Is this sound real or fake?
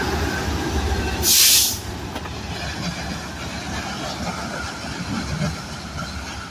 real